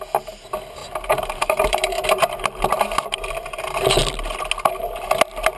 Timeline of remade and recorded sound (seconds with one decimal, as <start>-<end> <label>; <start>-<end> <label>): 0.0-0.8 recorded; 0.8-3.6 remade; 3.6-5.6 recorded